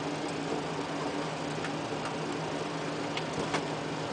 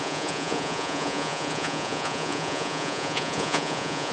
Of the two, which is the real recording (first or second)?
first